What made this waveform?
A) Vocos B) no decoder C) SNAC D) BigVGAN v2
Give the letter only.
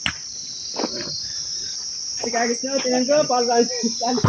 B